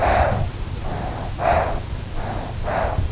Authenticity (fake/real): real